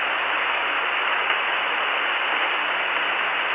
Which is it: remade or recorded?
recorded